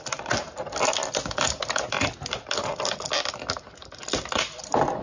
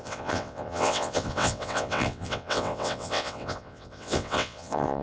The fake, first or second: second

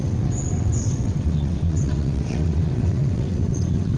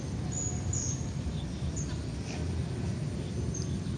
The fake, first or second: first